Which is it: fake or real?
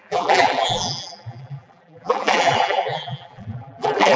fake